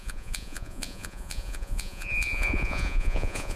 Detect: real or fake fake